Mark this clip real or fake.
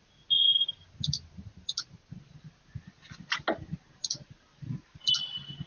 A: real